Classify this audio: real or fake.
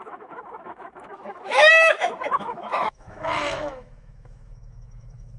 fake